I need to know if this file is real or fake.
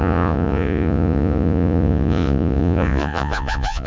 fake